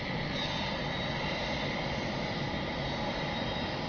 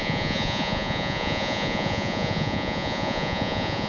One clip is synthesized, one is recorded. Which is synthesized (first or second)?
second